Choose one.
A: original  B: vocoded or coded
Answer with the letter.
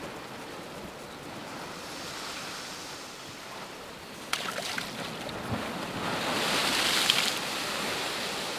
A